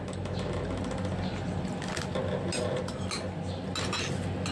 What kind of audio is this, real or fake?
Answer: real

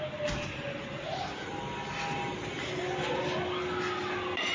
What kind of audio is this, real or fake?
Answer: real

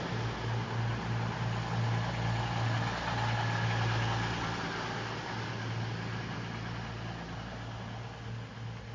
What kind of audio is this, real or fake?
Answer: real